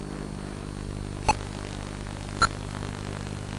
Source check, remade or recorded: recorded